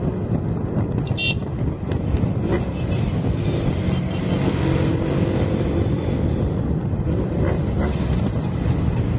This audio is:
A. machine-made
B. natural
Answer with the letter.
B